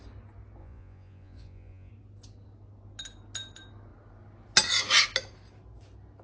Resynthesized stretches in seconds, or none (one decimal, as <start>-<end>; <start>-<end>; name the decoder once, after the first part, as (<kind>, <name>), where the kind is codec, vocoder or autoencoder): 0.6-1.9 (vocoder, Vocos)